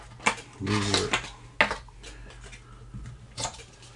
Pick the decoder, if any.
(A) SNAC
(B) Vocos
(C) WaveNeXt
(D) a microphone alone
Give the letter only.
D